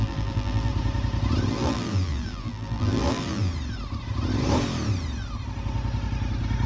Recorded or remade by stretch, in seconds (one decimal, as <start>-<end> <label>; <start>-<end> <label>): 0.0-0.7 remade; 0.7-1.5 recorded; 1.5-3.5 remade; 3.5-6.7 recorded